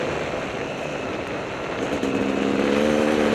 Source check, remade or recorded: recorded